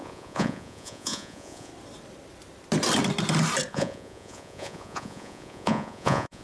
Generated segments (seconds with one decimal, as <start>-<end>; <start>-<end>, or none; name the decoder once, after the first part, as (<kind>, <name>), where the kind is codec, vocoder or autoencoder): 0.0-1.7 (vocoder, Vocos); 3.7-6.4